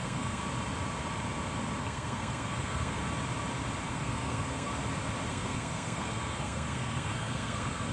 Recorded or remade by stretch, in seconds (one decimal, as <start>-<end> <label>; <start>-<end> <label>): 0.0-0.4 remade; 0.4-1.8 recorded; 1.8-3.0 remade; 3.0-3.9 recorded; 3.9-4.7 remade; 4.7-5.3 recorded; 5.3-7.9 remade

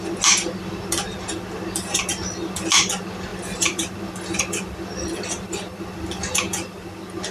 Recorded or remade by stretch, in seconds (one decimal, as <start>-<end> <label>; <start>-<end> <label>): 0.0-7.3 recorded

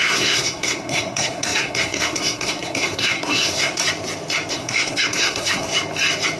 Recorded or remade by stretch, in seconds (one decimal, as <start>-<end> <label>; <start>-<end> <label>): 0.0-3.8 remade; 3.8-4.5 recorded; 4.5-5.7 remade; 5.7-6.4 recorded

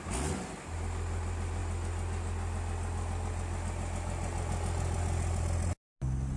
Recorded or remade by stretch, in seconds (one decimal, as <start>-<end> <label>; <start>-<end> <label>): 0.0-6.4 recorded

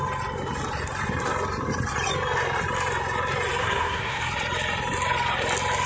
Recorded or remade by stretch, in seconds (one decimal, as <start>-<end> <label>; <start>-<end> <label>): 0.0-3.6 recorded; 3.6-4.2 remade; 4.2-5.9 recorded